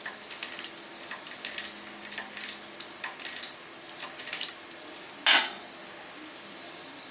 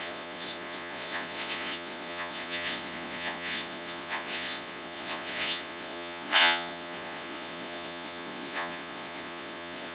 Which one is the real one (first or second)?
first